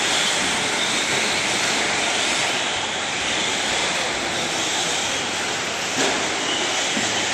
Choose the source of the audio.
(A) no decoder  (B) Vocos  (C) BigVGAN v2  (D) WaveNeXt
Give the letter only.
A